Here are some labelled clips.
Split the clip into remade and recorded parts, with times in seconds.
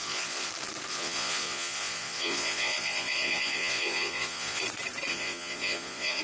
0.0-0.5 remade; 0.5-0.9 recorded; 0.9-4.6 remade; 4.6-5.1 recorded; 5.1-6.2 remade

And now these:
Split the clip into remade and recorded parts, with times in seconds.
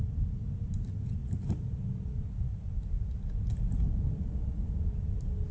0.0-5.5 recorded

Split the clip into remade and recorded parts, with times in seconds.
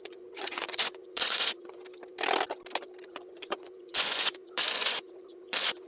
0.0-1.8 remade; 1.8-3.0 recorded; 3.0-5.9 remade